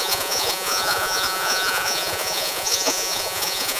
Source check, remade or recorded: remade